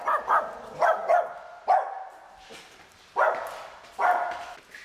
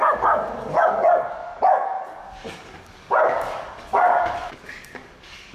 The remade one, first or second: second